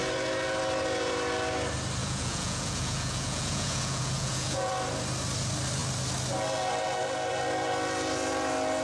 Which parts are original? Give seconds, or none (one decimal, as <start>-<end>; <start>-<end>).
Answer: 0.0-2.0; 4.7-8.8